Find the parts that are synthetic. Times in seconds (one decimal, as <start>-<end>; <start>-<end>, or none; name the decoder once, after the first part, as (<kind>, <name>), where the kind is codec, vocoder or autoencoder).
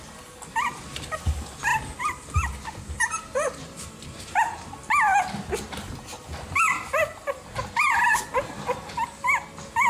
6.3-7.6 (vocoder, BigVGAN v2)